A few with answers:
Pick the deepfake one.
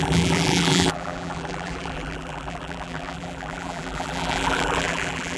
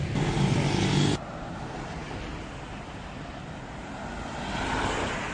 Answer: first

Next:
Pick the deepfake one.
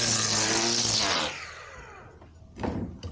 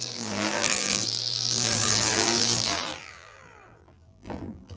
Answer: second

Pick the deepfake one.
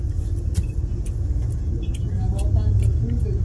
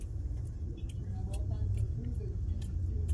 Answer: second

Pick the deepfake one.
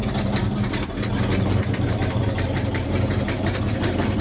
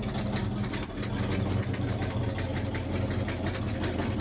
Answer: first